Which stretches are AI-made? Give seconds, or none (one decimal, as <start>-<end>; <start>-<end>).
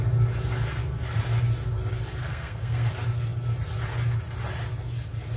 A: 2.2-2.9